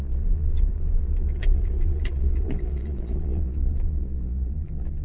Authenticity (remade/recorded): remade